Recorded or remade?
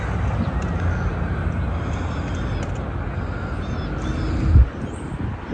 recorded